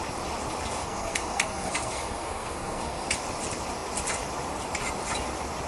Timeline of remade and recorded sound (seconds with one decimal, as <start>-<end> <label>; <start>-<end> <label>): 0.0-0.8 recorded; 0.8-3.1 remade; 3.1-5.7 recorded